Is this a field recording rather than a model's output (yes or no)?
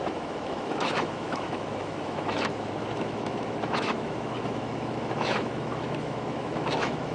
no